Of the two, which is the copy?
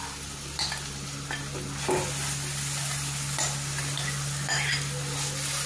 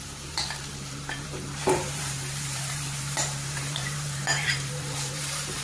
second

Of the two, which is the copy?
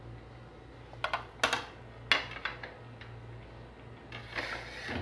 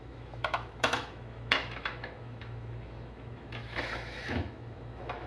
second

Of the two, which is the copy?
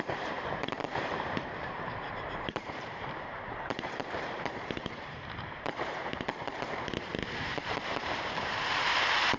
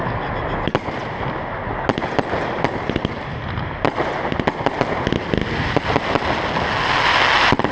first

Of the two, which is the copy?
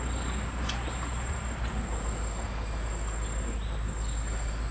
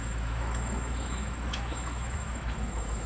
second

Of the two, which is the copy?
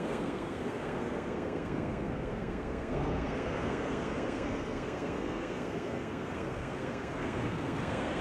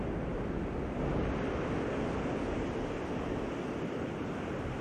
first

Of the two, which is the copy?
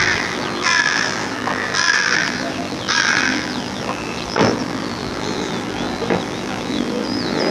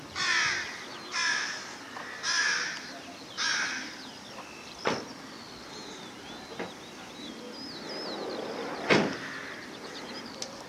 first